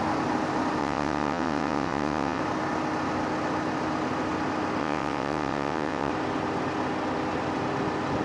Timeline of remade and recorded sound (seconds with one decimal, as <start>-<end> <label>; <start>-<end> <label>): 0.0-0.8 recorded; 0.8-2.4 remade; 2.4-4.8 recorded; 4.8-6.1 remade; 6.1-8.2 recorded